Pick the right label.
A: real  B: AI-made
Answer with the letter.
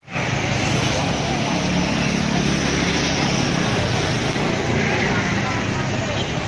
A